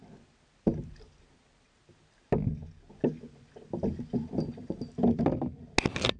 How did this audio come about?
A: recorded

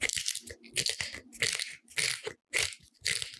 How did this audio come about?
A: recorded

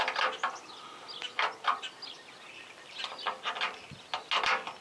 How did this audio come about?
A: recorded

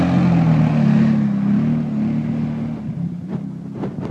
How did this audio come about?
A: recorded